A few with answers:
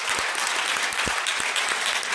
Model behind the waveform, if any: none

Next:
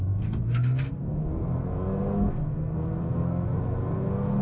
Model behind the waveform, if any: codec, SNAC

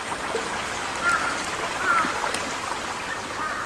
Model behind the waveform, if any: none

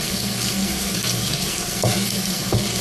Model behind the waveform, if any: codec, SNAC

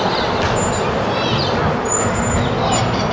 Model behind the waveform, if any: none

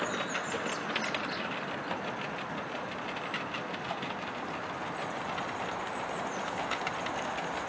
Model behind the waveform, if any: none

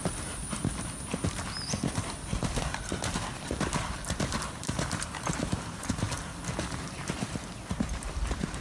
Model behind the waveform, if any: none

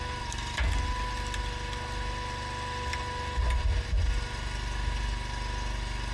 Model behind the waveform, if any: none